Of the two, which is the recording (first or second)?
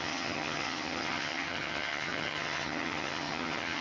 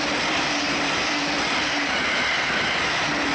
second